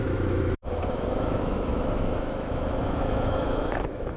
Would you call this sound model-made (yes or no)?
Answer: yes